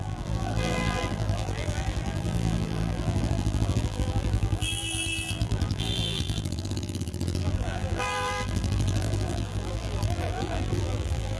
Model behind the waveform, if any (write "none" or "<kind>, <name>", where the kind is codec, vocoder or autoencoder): vocoder, BigVGAN v2